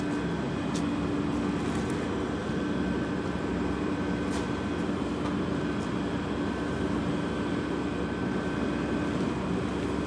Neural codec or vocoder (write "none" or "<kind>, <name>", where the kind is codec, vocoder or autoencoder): none